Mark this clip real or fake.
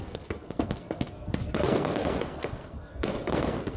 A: fake